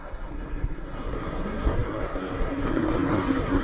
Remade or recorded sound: remade